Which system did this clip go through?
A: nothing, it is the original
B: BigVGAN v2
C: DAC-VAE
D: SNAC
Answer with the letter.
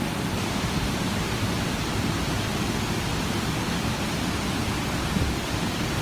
A